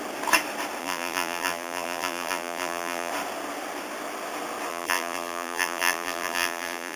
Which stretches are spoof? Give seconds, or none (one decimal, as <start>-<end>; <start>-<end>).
0.8-3.1; 4.7-7.0